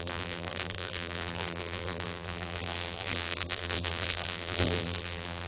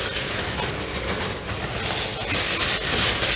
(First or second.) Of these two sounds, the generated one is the first